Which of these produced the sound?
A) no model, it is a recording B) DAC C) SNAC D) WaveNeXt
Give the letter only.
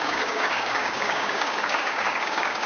B